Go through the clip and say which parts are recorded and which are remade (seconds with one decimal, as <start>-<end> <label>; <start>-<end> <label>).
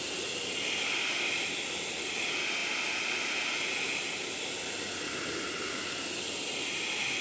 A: 0.0-7.2 recorded